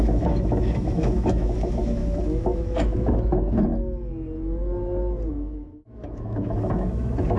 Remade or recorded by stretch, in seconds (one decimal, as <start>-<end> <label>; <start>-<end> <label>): 0.0-3.7 remade; 3.7-5.3 recorded; 5.3-7.4 remade